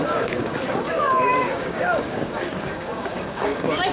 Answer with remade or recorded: remade